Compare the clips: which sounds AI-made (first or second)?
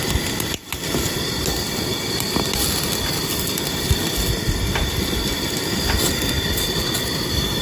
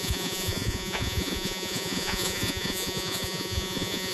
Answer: second